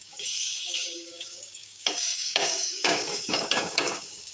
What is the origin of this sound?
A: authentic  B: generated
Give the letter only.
B